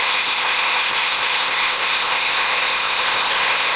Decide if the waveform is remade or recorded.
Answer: remade